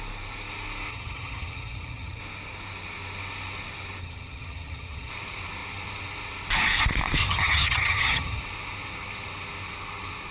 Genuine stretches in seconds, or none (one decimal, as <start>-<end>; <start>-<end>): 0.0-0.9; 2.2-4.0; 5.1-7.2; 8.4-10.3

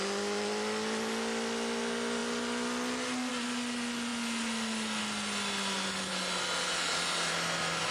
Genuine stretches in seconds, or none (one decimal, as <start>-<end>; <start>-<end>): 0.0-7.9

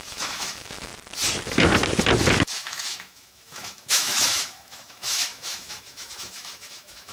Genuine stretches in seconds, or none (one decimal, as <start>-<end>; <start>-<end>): 0.9-2.5

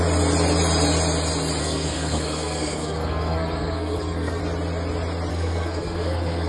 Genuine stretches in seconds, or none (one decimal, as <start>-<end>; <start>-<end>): 0.0-1.6; 4.4-5.3

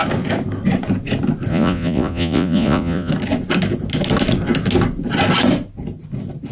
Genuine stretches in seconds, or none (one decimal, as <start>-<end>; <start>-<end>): 0.0-1.5; 3.1-6.5